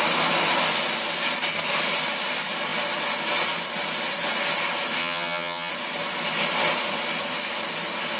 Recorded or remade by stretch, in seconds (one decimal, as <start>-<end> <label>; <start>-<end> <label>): 0.0-5.0 recorded; 5.0-5.7 remade; 5.7-8.2 recorded